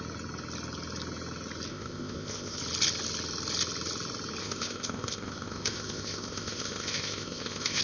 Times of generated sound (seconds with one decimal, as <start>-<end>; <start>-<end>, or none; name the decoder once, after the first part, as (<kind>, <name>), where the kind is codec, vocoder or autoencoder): 1.7-2.6 (codec, ZipCodec); 4.4-7.8